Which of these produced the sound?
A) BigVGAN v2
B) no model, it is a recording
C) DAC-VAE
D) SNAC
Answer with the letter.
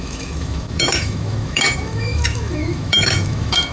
C